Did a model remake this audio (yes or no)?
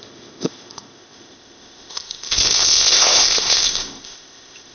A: yes